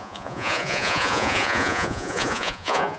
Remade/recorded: remade